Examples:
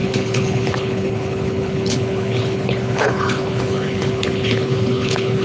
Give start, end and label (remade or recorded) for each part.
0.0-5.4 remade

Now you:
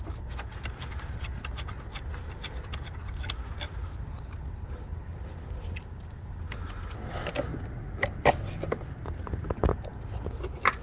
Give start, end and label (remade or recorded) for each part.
0.0-10.8 recorded

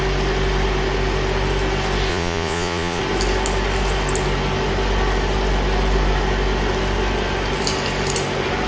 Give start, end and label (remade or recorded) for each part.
0.0-2.1 recorded; 2.1-3.0 remade; 3.0-8.7 recorded

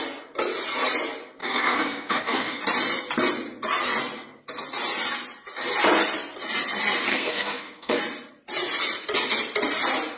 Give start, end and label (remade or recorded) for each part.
0.0-1.4 recorded; 1.4-2.6 remade; 2.6-7.1 recorded; 7.1-8.0 remade; 8.0-10.2 recorded